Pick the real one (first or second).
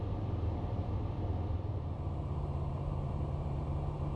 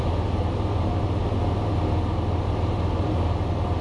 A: second